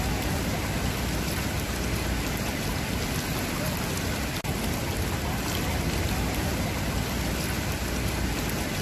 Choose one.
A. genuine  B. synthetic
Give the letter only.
A